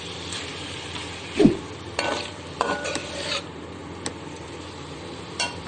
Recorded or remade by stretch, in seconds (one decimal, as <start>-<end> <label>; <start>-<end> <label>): 0.0-0.5 remade; 0.5-2.1 recorded; 2.1-5.7 remade